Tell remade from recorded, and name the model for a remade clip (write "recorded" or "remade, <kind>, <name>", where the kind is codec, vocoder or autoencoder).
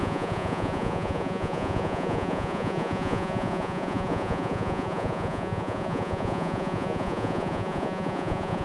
remade, vocoder, Vocos